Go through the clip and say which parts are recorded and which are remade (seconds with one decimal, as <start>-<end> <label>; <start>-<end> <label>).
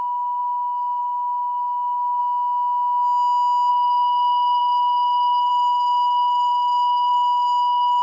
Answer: 0.0-2.2 remade; 2.2-3.7 recorded; 3.7-8.0 remade